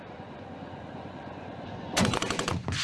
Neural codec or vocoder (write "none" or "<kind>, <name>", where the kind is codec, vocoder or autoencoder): vocoder, Vocos